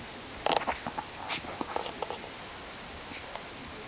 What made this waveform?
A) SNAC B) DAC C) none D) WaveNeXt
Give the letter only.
C